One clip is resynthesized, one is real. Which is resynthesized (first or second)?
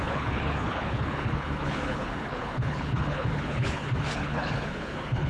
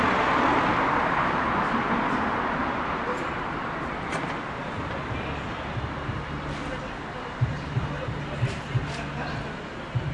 first